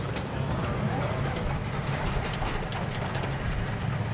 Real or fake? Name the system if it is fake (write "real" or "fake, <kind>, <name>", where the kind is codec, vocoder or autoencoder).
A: real